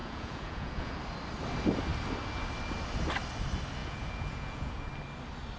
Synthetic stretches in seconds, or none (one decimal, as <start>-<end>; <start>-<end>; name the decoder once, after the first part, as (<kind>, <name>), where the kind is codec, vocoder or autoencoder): 0.0-1.0 (vocoder, Vocos); 3.8-4.9